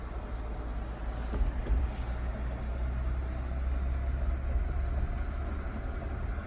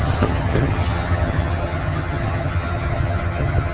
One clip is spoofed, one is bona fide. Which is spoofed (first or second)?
second